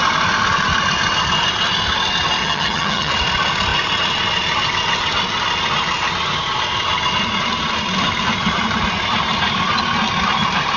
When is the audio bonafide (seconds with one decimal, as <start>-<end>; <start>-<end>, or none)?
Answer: 0.0-2.4; 3.1-10.8